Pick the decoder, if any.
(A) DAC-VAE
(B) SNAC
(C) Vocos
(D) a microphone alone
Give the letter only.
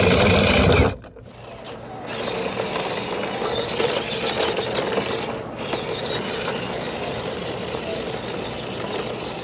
D